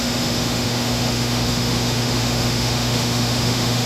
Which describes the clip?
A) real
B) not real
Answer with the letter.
B